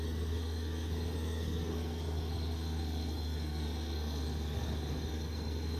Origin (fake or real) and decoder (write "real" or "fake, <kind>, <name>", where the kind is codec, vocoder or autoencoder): fake, codec, SNAC